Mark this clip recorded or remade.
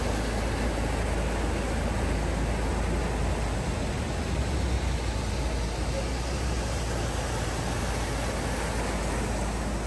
recorded